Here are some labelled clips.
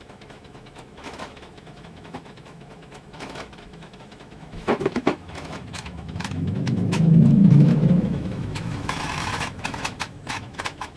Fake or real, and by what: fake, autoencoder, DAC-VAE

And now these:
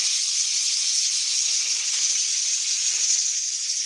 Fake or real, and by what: real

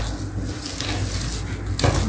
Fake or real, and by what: real